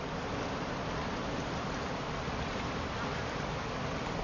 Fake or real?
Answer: real